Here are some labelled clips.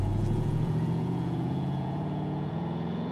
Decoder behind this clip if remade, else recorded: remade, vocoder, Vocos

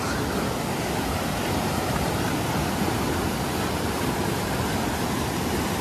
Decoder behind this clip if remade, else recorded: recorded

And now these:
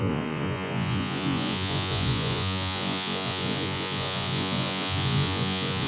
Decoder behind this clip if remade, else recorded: remade, vocoder, Vocos